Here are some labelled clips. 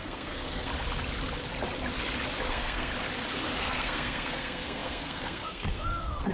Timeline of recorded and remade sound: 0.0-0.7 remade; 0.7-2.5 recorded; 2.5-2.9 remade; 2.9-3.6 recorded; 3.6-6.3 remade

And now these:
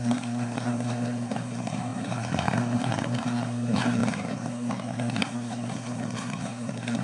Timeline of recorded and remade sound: 0.0-7.0 remade

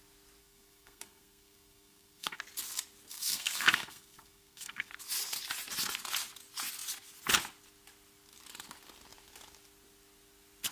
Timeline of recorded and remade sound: 0.0-0.4 recorded; 0.4-2.4 remade; 2.4-3.1 recorded; 3.1-4.9 remade; 4.9-10.7 recorded

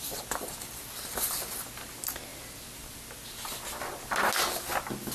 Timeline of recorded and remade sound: 0.0-5.1 recorded

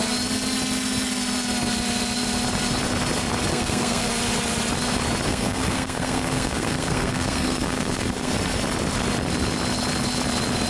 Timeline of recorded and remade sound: 0.0-3.5 recorded; 3.5-4.1 remade; 4.1-5.3 recorded; 5.3-8.3 remade; 8.3-10.7 recorded

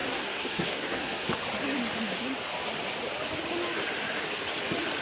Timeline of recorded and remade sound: 0.0-1.3 remade; 1.3-5.0 recorded

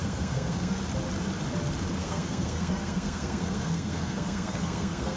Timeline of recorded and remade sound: 0.0-0.8 remade; 0.8-2.0 recorded; 2.0-5.2 remade

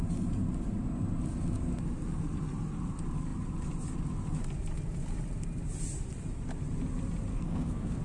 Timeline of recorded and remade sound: 0.0-7.3 recorded; 7.3-8.0 remade